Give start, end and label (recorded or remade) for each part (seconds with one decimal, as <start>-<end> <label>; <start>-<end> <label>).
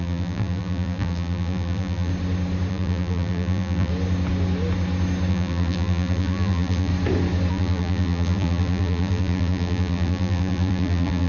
0.0-2.1 remade; 2.1-2.7 recorded; 2.7-3.9 remade; 3.9-5.3 recorded; 5.3-6.9 remade; 6.9-7.5 recorded; 7.5-11.3 remade